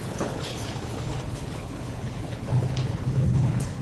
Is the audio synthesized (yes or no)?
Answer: yes